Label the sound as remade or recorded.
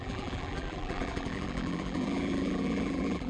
remade